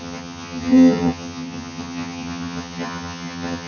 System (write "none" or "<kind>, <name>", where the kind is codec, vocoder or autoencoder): vocoder, HiFi-GAN